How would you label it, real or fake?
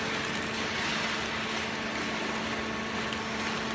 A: real